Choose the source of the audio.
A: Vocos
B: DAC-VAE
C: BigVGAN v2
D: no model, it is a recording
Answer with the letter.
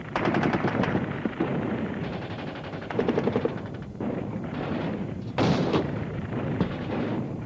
C